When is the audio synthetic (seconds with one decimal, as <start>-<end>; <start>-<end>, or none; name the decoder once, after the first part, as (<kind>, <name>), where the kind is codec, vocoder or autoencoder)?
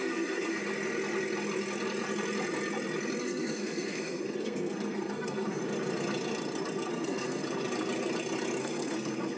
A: 0.0-0.6 (codec, SNAC); 3.2-5.6; 6.9-7.4; 8.6-9.4